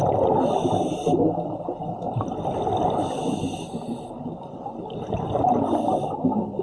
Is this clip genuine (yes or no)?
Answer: yes